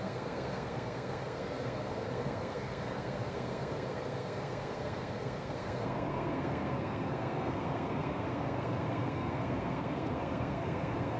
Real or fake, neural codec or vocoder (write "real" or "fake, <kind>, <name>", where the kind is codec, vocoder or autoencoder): fake, codec, SNAC